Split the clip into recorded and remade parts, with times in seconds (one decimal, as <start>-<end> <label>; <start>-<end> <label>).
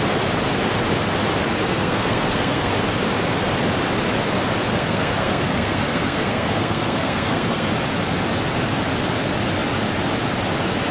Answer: 0.0-1.7 recorded; 1.7-2.7 remade; 2.7-4.7 recorded; 4.7-7.7 remade; 7.7-10.9 recorded